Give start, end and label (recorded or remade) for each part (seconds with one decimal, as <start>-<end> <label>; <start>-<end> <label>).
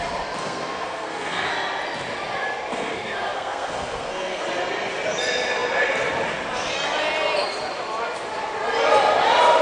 0.0-0.4 recorded; 0.4-1.5 remade; 1.5-2.7 recorded; 2.7-4.4 remade; 4.4-9.6 recorded